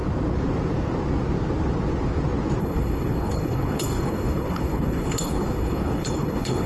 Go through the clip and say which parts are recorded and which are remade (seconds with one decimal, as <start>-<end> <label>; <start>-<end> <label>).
0.0-2.6 recorded; 2.6-6.7 remade